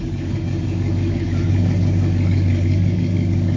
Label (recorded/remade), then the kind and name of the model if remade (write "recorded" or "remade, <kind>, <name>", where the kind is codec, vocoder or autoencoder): remade, codec, DAC